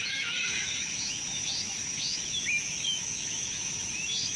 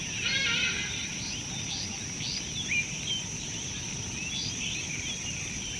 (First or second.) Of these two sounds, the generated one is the first